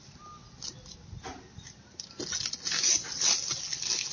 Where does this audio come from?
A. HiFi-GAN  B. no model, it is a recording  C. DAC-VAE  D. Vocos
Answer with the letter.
B